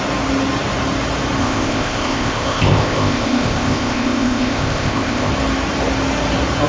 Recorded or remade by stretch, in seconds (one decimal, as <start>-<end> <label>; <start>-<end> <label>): 0.0-1.4 recorded; 1.4-5.3 remade; 5.3-6.7 recorded

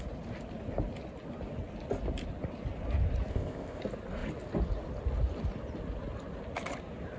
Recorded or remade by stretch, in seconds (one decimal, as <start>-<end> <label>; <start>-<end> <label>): 0.0-3.3 recorded; 3.3-3.8 remade; 3.8-7.2 recorded

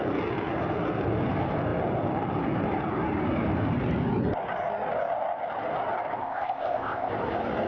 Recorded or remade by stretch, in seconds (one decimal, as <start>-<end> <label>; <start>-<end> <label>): 0.0-6.2 recorded; 6.2-7.1 remade; 7.1-7.7 recorded

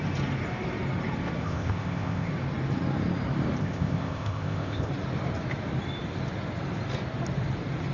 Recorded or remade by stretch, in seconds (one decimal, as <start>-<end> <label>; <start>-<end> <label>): 0.0-1.4 recorded; 1.4-2.3 remade; 2.3-3.6 recorded; 3.6-4.9 remade; 4.9-7.9 recorded

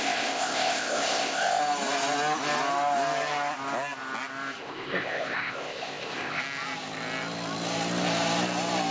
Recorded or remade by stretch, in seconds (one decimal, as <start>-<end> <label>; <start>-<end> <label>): 0.0-1.6 remade; 1.6-4.6 recorded; 4.6-6.4 remade; 6.4-8.9 recorded

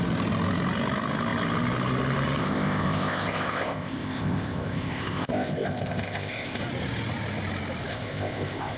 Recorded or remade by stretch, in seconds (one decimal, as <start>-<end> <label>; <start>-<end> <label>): 0.0-2.4 recorded; 2.4-6.6 remade; 6.6-7.9 recorded; 7.9-8.8 remade

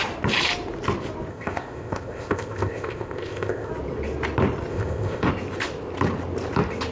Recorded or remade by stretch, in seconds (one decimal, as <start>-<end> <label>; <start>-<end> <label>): 0.0-1.3 recorded; 1.3-3.7 remade; 3.7-4.7 recorded; 4.7-5.3 remade; 5.3-6.9 recorded

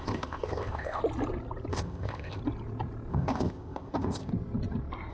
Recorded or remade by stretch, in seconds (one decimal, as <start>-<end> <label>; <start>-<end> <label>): 0.0-1.0 remade; 1.0-1.7 recorded; 1.7-2.4 remade; 2.4-3.1 recorded; 3.1-4.3 remade; 4.3-5.1 recorded